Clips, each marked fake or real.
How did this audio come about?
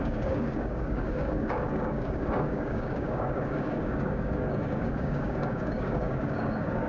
fake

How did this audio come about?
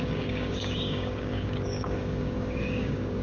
fake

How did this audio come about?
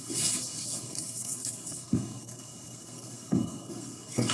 fake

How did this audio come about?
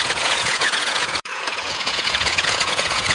fake